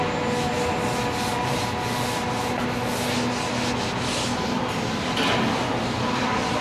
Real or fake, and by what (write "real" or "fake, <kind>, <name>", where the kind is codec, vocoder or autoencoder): real